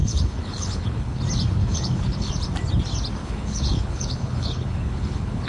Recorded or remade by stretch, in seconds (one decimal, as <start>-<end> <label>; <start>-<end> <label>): 0.0-1.2 remade; 1.2-1.6 recorded; 1.6-2.3 remade; 2.3-3.2 recorded; 3.2-5.5 remade